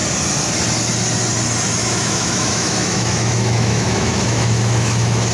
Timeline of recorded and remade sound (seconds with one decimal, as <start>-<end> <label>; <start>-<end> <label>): 0.0-1.8 recorded; 1.8-5.3 remade